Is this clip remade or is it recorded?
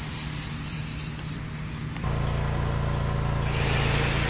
recorded